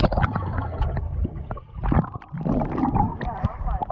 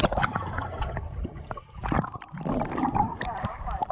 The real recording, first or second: first